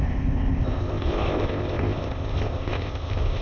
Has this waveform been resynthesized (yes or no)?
yes